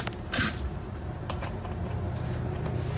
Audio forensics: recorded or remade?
recorded